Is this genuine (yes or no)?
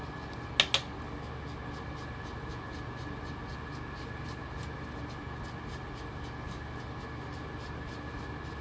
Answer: yes